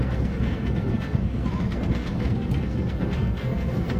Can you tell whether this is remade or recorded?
remade